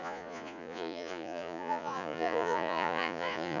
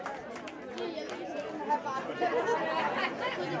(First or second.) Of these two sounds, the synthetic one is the first